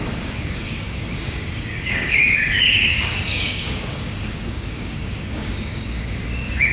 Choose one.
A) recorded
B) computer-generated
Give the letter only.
B